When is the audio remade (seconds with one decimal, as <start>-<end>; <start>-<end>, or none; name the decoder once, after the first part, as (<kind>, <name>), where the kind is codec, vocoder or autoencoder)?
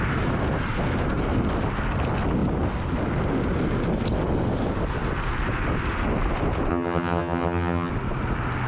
6.7-7.9 (vocoder, HiFi-GAN)